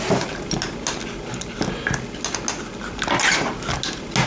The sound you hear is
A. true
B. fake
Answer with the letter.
A